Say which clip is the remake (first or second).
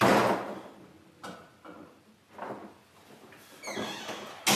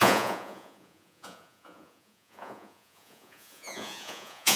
second